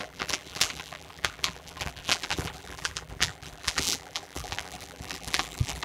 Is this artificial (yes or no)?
yes